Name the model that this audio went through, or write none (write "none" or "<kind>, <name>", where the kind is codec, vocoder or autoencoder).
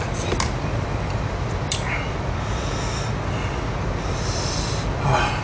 none